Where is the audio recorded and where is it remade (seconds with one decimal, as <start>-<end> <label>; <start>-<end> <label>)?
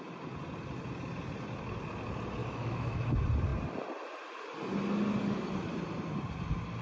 0.0-2.4 recorded; 2.4-3.1 remade; 3.1-6.8 recorded